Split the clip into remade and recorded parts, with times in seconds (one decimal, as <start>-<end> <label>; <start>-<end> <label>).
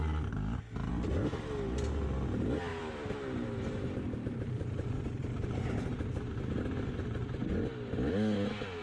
0.0-2.7 recorded; 2.7-6.6 remade; 6.6-8.8 recorded